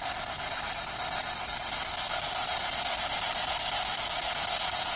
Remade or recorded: recorded